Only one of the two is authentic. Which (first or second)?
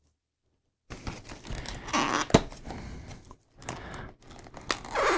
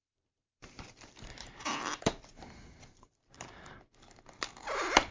first